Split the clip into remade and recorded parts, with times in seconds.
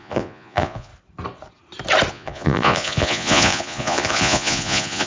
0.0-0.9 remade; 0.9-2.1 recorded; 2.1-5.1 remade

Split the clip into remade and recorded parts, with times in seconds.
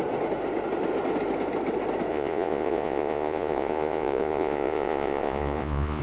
0.0-2.1 recorded; 2.1-6.0 remade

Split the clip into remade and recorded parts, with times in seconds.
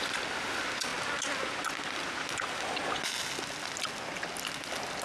0.0-5.0 recorded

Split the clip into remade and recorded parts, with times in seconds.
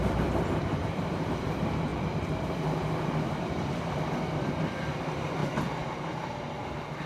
0.0-5.4 remade; 5.4-6.3 recorded; 6.3-7.1 remade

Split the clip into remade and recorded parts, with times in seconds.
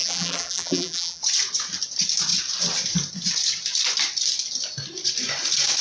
0.0-1.2 remade; 1.2-5.8 recorded